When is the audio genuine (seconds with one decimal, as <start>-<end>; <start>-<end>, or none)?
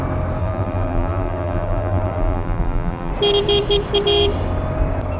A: 0.0-0.4; 3.1-5.2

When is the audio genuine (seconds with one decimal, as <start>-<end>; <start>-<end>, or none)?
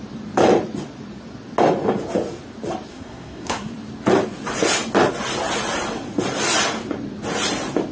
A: 0.0-2.9; 3.7-7.9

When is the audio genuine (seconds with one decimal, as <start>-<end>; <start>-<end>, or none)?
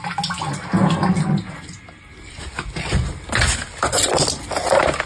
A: 0.0-5.1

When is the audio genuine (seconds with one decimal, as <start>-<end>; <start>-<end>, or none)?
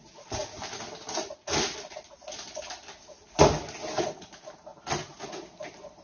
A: 0.0-6.0